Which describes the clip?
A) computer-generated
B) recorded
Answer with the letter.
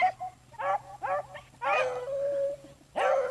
B